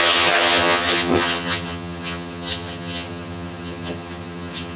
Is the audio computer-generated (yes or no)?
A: yes